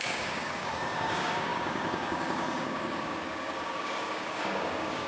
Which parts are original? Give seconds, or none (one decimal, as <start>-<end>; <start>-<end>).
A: none